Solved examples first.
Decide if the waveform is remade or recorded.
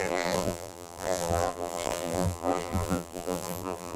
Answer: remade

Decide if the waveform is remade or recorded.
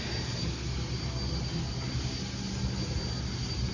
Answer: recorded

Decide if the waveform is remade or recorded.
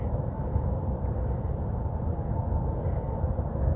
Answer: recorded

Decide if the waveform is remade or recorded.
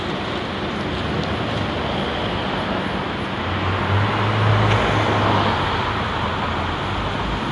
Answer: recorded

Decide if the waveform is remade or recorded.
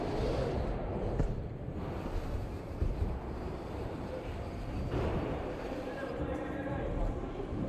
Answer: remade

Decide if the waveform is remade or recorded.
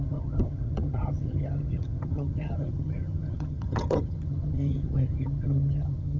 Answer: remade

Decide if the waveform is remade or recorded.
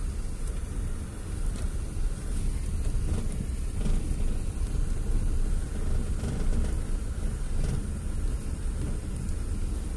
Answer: recorded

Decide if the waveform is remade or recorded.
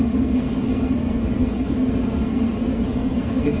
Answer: remade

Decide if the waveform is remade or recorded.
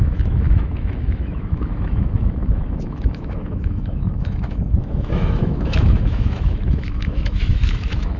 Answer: remade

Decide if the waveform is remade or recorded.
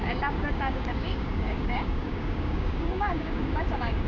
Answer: remade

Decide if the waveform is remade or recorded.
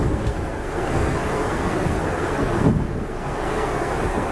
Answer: remade